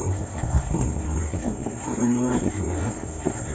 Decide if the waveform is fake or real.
fake